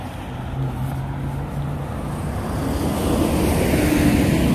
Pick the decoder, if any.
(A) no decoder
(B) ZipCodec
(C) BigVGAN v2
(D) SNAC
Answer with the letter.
A